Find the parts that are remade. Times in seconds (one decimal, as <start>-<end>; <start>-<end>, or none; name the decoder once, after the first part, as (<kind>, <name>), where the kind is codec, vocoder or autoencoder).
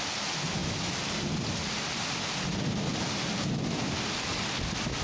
none